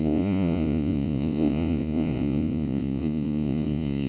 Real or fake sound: fake